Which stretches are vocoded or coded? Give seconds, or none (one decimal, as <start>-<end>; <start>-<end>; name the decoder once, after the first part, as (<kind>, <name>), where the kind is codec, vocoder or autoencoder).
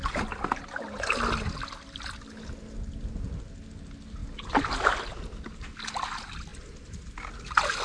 none